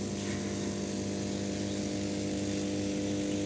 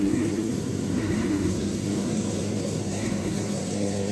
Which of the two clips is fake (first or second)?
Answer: second